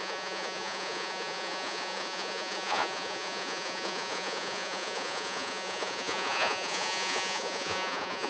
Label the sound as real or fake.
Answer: fake